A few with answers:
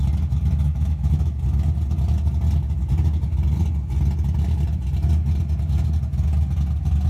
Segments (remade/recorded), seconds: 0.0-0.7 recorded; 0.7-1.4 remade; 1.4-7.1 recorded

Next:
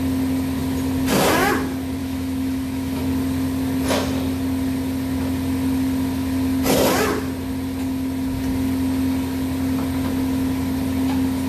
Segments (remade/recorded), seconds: 0.0-2.0 recorded; 2.0-3.0 remade; 3.0-11.5 recorded

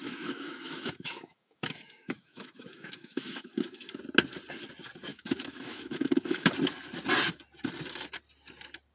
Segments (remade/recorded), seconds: 0.0-4.0 remade; 4.0-5.1 recorded; 5.1-6.5 remade; 6.5-8.9 recorded

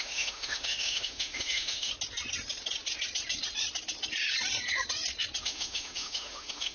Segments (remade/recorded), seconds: 0.0-1.9 remade; 1.9-5.4 recorded; 5.4-6.7 remade

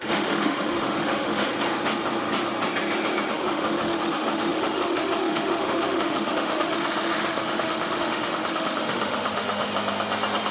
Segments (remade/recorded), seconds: 0.0-1.5 remade; 1.5-3.3 recorded; 3.3-9.7 remade; 9.7-10.5 recorded